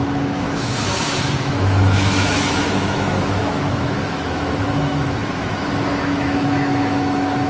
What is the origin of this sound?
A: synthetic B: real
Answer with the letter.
A